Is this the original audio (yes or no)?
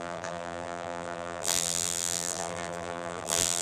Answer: no